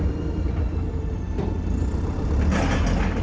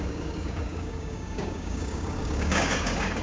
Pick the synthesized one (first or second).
second